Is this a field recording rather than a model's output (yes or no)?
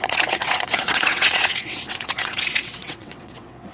no